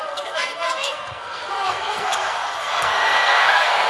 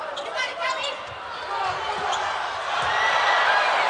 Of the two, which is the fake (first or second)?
first